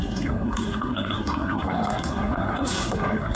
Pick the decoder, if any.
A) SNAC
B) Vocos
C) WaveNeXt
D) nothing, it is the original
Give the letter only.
A